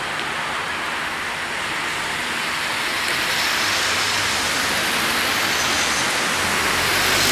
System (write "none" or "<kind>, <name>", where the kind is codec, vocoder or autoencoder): none